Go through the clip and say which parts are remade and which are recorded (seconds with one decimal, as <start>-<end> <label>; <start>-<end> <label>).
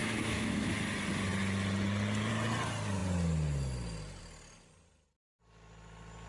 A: 0.0-0.7 remade; 0.7-6.3 recorded